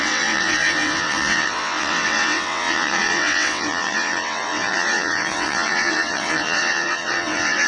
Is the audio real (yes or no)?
no